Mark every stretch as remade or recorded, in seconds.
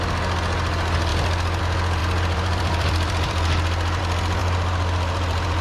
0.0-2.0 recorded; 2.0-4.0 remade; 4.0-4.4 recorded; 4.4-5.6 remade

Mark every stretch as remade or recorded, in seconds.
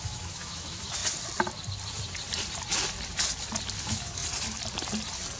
0.0-1.0 remade; 1.0-3.8 recorded; 3.8-4.2 remade; 4.2-5.4 recorded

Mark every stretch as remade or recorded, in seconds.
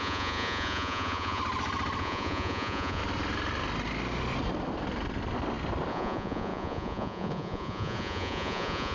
0.0-1.4 remade; 1.4-2.0 recorded; 2.0-3.0 remade; 3.0-5.9 recorded; 5.9-8.9 remade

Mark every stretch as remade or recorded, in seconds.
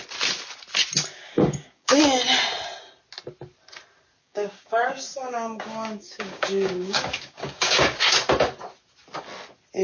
0.0-1.1 recorded; 1.1-2.0 remade; 2.0-4.2 recorded; 4.2-8.0 remade; 8.0-9.8 recorded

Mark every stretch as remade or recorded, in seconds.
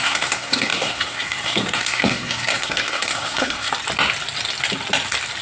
0.0-3.7 remade; 3.7-5.4 recorded